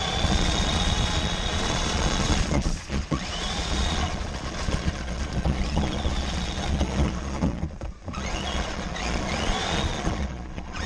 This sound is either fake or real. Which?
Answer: fake